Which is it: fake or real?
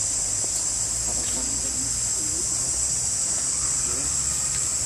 real